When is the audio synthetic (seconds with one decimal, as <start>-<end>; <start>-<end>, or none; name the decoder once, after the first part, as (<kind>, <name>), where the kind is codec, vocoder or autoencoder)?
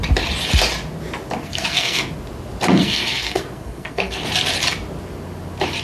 1.4-2.1 (codec, SNAC); 2.7-4.2